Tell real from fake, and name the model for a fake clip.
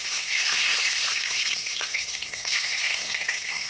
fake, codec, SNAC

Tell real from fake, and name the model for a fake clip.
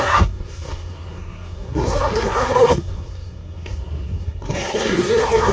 fake, codec, SNAC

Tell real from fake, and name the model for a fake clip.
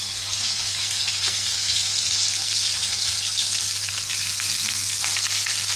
fake, codec, SNAC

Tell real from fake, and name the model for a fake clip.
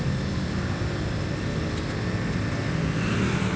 real